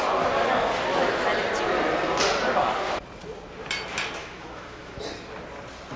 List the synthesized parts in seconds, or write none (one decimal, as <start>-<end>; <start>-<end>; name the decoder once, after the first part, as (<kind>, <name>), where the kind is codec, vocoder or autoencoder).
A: 4.2-5.0 (autoencoder, DAC-VAE)